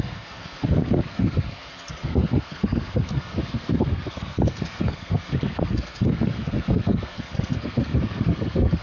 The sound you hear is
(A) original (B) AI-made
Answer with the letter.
B